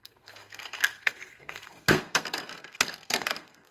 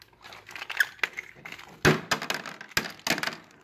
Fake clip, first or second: first